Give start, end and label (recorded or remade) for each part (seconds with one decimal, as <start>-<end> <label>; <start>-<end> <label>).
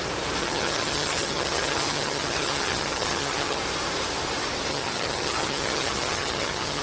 0.0-0.4 recorded; 0.4-3.6 remade; 3.6-4.7 recorded; 4.7-6.8 remade